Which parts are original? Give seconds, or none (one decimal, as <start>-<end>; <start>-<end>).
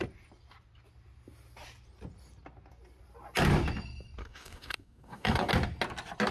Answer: 0.0-4.2; 5.5-6.3